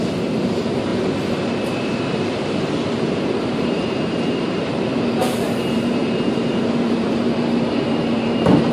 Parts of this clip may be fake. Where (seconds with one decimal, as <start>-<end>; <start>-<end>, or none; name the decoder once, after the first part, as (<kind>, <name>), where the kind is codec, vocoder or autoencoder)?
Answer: 0.0-0.9 (vocoder, BigVGAN v2); 2.1-8.7

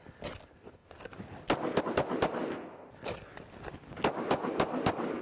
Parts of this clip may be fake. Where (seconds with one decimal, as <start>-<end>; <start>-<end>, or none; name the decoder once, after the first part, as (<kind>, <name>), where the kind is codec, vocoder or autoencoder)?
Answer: 2.4-2.9 (vocoder, BigVGAN v2)

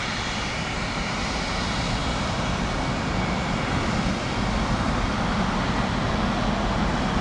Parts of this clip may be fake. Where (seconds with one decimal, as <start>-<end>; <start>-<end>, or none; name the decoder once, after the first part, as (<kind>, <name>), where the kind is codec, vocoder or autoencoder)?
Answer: 0.0-0.5 (vocoder, BigVGAN v2); 2.0-6.1